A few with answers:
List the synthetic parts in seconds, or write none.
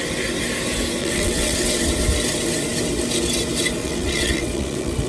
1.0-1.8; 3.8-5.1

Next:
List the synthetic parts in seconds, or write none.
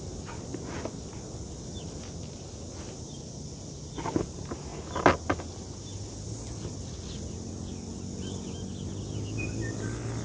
none